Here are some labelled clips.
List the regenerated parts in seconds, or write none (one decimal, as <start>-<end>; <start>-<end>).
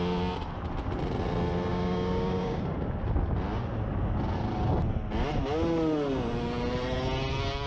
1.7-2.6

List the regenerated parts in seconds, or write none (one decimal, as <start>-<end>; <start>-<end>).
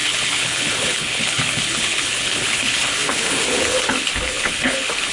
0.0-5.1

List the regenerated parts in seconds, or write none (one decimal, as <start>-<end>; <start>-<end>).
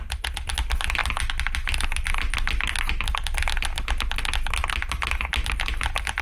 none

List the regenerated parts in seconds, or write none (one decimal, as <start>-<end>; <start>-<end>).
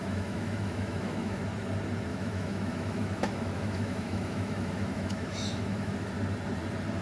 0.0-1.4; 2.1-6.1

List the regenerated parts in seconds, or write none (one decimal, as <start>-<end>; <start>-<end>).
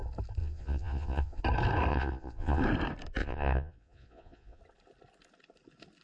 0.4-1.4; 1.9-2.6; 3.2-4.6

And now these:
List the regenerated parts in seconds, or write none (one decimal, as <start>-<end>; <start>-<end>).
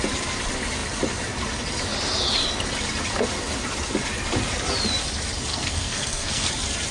5.5-6.5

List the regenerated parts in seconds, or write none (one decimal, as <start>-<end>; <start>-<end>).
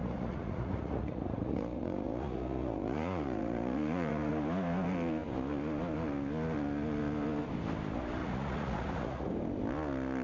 0.0-4.3; 8.2-9.3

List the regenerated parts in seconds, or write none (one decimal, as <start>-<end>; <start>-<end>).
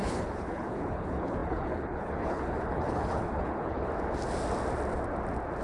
0.0-3.9